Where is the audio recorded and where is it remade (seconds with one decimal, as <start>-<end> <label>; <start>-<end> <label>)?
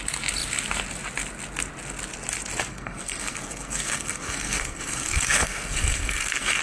0.0-2.7 recorded; 2.7-6.6 remade